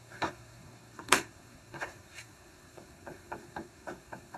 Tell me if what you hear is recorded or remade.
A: remade